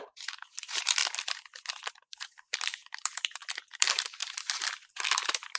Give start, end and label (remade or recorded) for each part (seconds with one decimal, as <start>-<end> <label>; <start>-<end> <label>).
0.0-1.0 remade; 1.0-1.7 recorded; 1.7-4.2 remade; 4.2-4.9 recorded; 4.9-5.6 remade